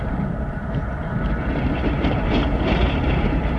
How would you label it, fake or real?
fake